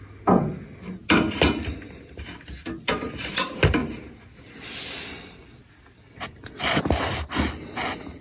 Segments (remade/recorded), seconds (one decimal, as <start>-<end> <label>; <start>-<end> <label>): 0.0-8.2 recorded